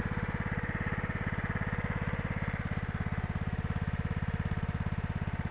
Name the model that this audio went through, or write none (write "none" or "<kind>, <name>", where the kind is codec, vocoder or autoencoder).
none